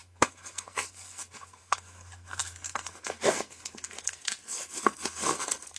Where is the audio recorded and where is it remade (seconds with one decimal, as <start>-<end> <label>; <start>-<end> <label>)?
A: 0.0-5.8 remade